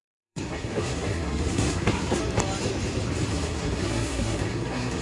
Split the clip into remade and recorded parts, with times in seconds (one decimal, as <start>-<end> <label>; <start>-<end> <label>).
0.0-2.2 remade; 2.2-3.3 recorded; 3.3-5.0 remade